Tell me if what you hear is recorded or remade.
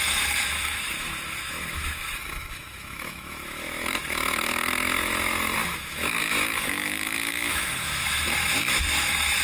remade